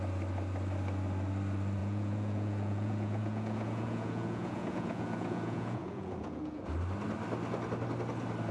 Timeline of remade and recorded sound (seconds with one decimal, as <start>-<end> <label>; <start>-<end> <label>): 0.0-1.8 recorded; 1.8-6.7 remade; 6.7-8.5 recorded